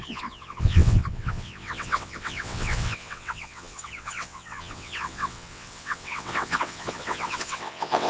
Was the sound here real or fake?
fake